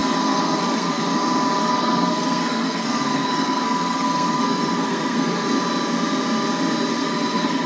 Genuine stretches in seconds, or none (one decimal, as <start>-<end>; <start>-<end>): 1.0-1.6; 5.6-6.9